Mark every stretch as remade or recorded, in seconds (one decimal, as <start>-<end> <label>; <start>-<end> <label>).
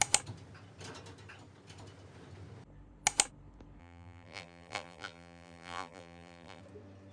0.0-3.8 recorded; 3.8-6.6 remade; 6.6-7.1 recorded